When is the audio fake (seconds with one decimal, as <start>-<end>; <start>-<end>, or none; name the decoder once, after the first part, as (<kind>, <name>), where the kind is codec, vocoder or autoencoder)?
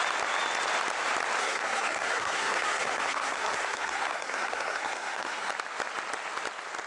1.4-5.5 (codec, SNAC)